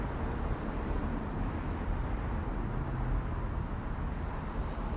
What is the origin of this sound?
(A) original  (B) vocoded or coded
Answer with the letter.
A